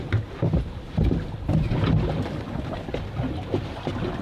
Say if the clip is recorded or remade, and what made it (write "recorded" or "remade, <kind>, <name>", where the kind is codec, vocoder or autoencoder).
recorded